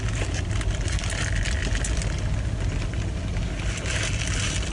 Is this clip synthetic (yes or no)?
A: no